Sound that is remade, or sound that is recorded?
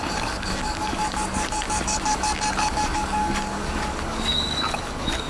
remade